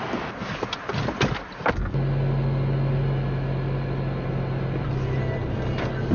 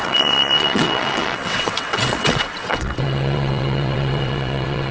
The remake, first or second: second